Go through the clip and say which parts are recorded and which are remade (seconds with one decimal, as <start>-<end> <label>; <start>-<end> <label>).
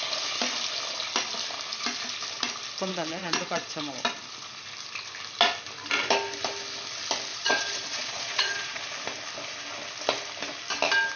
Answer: 0.0-2.9 recorded; 2.9-3.8 remade; 3.8-7.3 recorded; 7.3-8.8 remade; 8.8-11.2 recorded